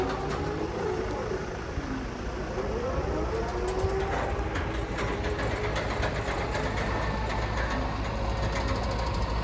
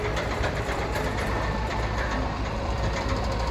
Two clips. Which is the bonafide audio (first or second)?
first